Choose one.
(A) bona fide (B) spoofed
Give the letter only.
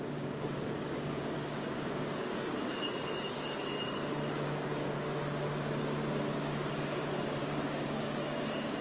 B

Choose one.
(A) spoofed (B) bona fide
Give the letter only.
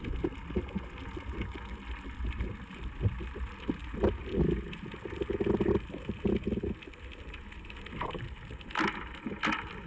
B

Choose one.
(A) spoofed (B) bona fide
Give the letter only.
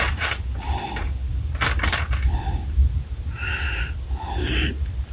A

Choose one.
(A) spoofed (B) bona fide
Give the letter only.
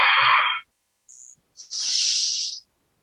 B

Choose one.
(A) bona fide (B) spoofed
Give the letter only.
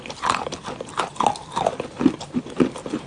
A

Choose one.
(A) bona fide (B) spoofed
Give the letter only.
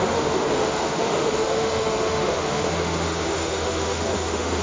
B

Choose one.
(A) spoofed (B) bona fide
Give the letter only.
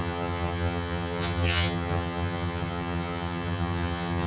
A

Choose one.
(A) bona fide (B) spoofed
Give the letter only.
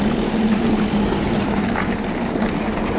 A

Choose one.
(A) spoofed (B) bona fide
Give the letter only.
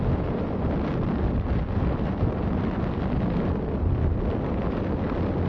B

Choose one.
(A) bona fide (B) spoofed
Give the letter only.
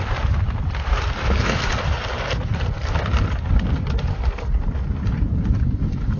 A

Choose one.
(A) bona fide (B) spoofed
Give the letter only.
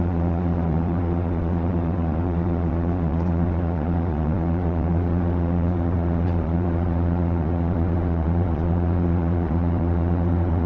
B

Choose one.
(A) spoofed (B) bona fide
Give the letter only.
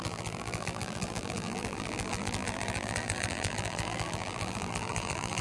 A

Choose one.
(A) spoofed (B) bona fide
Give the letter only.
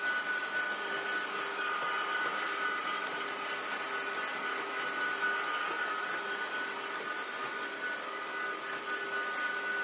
B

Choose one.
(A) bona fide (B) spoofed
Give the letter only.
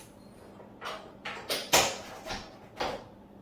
A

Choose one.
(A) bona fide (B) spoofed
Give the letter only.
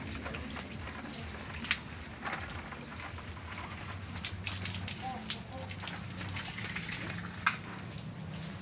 A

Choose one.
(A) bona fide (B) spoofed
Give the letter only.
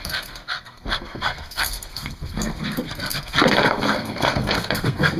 B